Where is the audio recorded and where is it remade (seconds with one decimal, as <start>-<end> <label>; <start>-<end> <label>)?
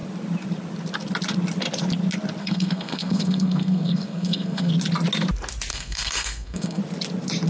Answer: 0.0-2.4 recorded; 2.4-4.7 remade; 4.7-5.7 recorded; 5.7-6.8 remade; 6.8-7.5 recorded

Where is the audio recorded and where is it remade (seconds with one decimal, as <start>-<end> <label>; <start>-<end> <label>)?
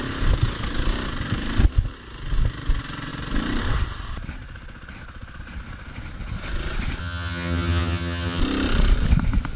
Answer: 0.0-7.0 recorded; 7.0-8.4 remade; 8.4-9.6 recorded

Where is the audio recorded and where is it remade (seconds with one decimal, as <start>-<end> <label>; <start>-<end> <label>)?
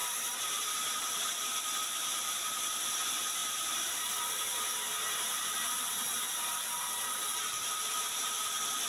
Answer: 0.0-0.7 remade; 0.7-3.4 recorded; 3.4-5.4 remade; 5.4-7.8 recorded; 7.8-8.3 remade; 8.3-8.9 recorded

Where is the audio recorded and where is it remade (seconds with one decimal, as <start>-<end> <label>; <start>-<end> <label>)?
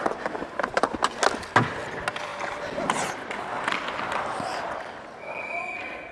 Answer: 0.0-6.1 recorded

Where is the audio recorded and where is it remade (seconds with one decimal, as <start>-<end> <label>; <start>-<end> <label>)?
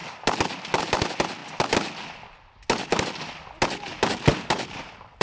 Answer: 0.0-0.8 recorded; 0.8-1.4 remade; 1.4-4.5 recorded; 4.5-5.2 remade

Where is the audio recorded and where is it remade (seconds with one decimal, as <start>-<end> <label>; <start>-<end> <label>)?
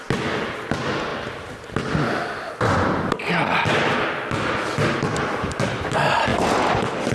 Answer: 0.0-7.1 recorded